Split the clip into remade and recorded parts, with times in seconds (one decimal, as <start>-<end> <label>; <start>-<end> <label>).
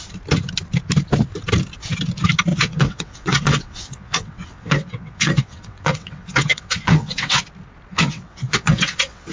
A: 0.0-2.5 recorded; 2.5-7.4 remade; 7.4-7.9 recorded; 7.9-9.3 remade